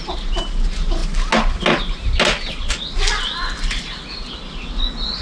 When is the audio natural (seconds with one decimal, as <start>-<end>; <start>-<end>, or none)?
0.0-5.2